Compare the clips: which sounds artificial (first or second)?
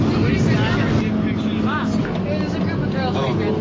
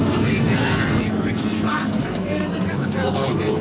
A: second